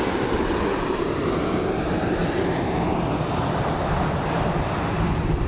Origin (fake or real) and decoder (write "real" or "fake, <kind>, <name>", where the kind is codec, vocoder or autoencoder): real